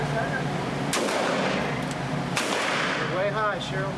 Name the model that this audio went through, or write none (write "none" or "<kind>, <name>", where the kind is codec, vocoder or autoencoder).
none